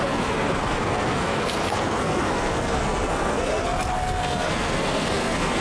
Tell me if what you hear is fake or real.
fake